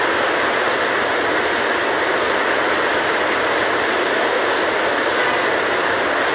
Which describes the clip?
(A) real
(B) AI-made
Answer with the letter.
A